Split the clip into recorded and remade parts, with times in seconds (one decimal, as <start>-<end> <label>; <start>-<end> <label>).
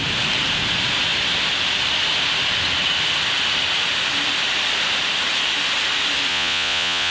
0.0-6.3 recorded; 6.3-7.1 remade